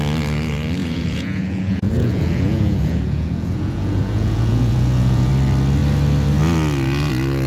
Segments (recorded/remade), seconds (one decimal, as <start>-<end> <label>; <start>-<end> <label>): 0.0-0.8 recorded; 0.8-5.3 remade; 5.3-7.5 recorded